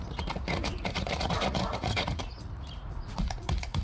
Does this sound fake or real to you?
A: fake